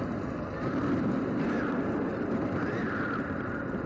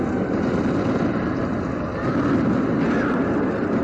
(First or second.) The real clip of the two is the second